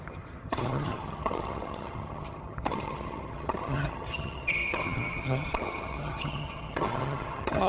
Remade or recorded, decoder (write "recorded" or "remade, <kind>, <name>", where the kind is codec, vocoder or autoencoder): remade, vocoder, HiFi-GAN